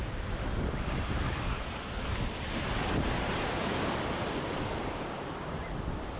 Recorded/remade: recorded